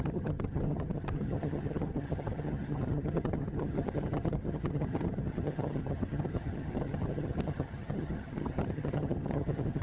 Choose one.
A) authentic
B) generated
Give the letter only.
B